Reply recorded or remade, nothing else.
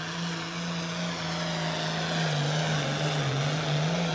recorded